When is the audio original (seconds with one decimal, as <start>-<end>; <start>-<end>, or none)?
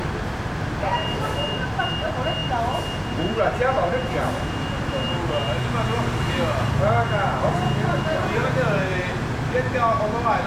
0.0-8.4; 8.9-10.5